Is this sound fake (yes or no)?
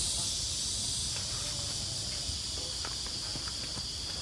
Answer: no